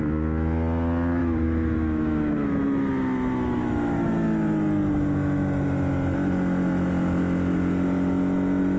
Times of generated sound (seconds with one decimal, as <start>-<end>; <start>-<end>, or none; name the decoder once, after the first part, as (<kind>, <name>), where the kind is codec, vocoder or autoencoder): 1.2-4.1 (autoencoder, DAC-VAE)